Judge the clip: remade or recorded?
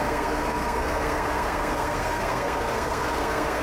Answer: remade